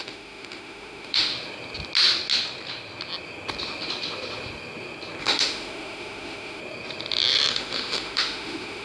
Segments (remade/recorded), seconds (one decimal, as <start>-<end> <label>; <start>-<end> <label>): 0.0-1.3 remade; 1.3-5.2 recorded; 5.2-6.6 remade; 6.6-7.5 recorded; 7.5-8.8 remade

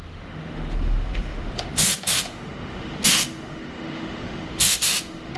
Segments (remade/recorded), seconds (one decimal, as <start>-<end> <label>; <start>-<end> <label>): 0.0-5.4 remade

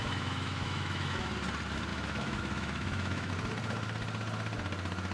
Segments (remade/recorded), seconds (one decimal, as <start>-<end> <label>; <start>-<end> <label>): 0.0-1.3 remade; 1.3-1.9 recorded; 1.9-3.3 remade; 3.3-5.1 recorded

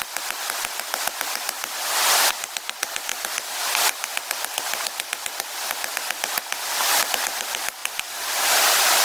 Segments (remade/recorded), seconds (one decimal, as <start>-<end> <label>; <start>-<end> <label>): 0.0-9.0 recorded

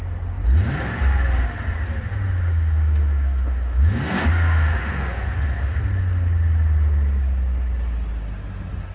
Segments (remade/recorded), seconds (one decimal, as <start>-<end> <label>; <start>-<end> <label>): 0.0-2.1 recorded; 2.1-5.8 remade; 5.8-8.9 recorded

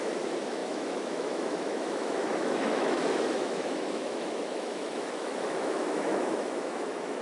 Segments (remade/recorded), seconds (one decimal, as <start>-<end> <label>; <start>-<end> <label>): 0.0-7.2 remade